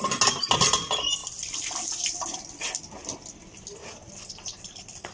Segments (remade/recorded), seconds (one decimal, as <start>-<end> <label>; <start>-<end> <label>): 0.0-5.1 recorded